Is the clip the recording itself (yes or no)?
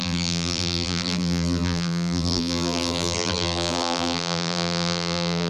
no